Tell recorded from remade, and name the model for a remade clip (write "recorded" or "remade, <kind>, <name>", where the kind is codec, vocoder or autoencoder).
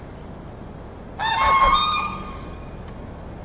recorded